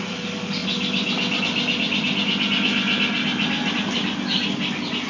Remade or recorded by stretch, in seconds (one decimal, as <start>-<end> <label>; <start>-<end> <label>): 0.0-5.1 recorded